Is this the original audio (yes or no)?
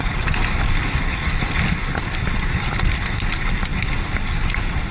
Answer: yes